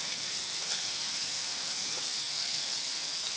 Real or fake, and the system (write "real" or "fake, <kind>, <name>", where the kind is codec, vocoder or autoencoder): fake, codec, SNAC